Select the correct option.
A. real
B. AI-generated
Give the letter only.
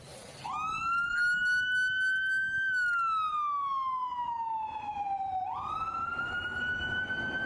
A